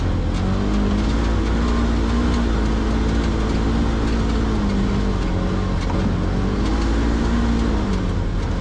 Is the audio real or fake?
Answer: real